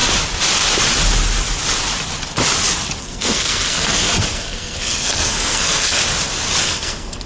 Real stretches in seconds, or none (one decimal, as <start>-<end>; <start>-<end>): 0.0-3.0; 6.0-6.6